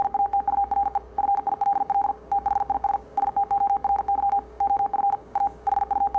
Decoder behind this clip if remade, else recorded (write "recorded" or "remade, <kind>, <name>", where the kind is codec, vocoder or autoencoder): remade, codec, DAC